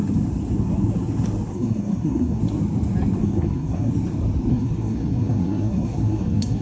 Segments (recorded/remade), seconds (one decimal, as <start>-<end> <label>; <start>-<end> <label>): 0.0-1.5 recorded; 1.5-2.4 remade; 2.4-3.2 recorded; 3.2-3.9 remade; 3.9-4.5 recorded; 4.5-6.6 remade